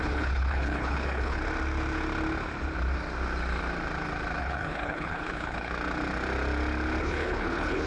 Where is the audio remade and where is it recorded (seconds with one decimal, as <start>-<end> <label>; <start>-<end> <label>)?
0.0-1.4 remade; 1.4-4.4 recorded; 4.4-5.7 remade; 5.7-7.0 recorded; 7.0-7.9 remade